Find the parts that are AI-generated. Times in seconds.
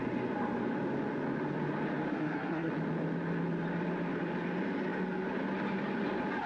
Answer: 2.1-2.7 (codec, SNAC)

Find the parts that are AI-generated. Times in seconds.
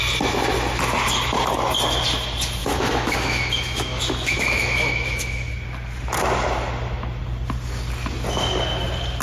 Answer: 2.6-5.5 (autoencoder, DAC-VAE)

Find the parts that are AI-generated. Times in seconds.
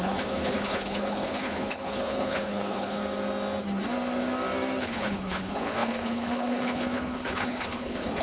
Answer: 0.0-3.0 (codec, HILCodec); 4.8-8.2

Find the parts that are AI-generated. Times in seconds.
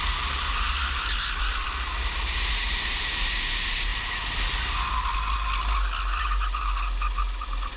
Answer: none